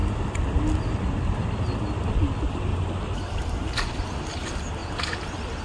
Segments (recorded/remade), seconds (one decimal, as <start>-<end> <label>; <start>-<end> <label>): 0.0-2.7 recorded; 2.7-3.9 remade; 3.9-5.6 recorded